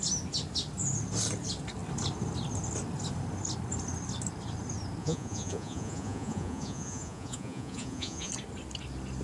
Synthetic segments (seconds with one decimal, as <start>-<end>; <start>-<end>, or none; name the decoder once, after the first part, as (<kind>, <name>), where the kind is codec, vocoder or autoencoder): 5.0-8.3 (vocoder, Vocos)